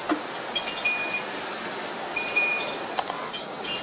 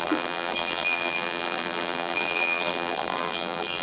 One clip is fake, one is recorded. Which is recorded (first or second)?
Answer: first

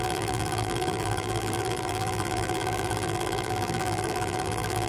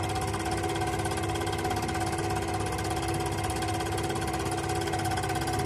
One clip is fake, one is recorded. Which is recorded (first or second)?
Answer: second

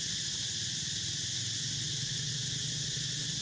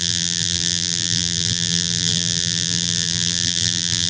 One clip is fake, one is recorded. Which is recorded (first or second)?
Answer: first